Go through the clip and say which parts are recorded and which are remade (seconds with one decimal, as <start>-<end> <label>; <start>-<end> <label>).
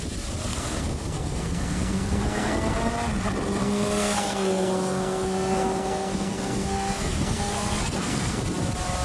0.0-0.5 recorded; 0.5-2.9 remade; 2.9-3.6 recorded; 3.6-8.4 remade; 8.4-9.0 recorded